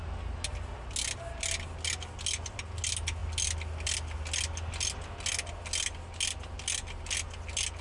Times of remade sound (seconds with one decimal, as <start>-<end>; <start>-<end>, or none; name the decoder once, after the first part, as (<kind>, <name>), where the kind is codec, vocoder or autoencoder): none